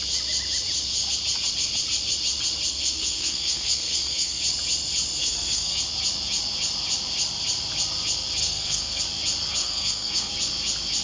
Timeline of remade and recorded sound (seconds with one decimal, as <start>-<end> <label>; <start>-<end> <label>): 0.0-2.7 recorded; 2.7-4.4 remade; 4.4-5.2 recorded; 5.2-5.8 remade; 5.8-8.4 recorded; 8.4-9.0 remade; 9.0-9.6 recorded; 9.6-10.3 remade; 10.3-11.0 recorded

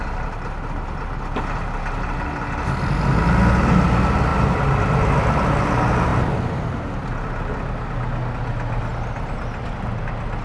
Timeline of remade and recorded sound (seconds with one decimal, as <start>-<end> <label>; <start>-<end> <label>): 0.0-4.3 recorded; 4.3-5.3 remade; 5.3-10.4 recorded

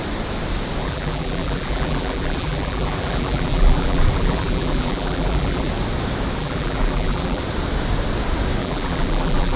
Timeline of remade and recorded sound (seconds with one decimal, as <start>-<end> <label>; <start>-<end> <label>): 0.0-0.8 recorded; 0.8-5.7 remade; 5.7-6.4 recorded; 6.4-7.4 remade; 7.4-8.6 recorded; 8.6-9.6 remade

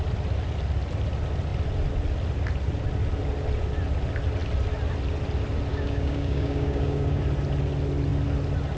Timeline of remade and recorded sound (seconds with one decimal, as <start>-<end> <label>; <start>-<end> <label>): 0.0-5.7 recorded; 5.7-7.2 remade; 7.2-8.8 recorded

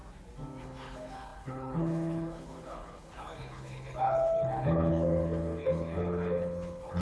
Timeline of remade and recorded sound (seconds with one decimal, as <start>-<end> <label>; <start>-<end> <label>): 0.0-0.6 recorded; 0.6-7.0 remade